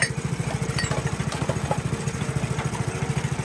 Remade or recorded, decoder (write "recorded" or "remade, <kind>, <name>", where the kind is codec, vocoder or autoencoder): remade, vocoder, BigVGAN v2